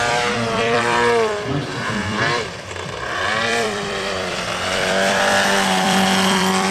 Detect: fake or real fake